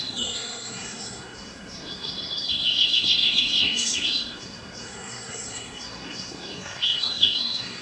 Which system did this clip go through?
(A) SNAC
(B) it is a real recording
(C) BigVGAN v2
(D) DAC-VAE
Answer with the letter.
A